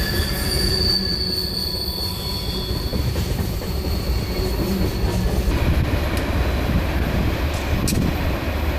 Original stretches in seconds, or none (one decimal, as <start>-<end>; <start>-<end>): 0.0-2.9; 4.5-8.8